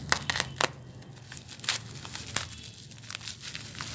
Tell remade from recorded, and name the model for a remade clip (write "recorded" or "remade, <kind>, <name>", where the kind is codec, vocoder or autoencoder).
recorded